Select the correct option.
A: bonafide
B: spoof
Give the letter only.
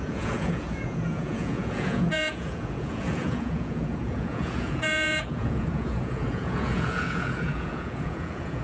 B